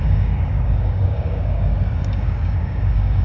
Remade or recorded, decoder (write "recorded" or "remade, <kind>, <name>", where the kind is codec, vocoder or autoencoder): remade, codec, DAC